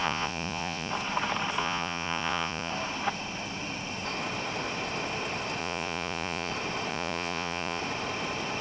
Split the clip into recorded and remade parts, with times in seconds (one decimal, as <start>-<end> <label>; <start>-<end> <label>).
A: 0.0-0.9 remade; 0.9-1.6 recorded; 1.6-2.7 remade; 2.7-5.6 recorded; 5.6-6.5 remade; 6.5-6.9 recorded; 6.9-7.8 remade; 7.8-8.6 recorded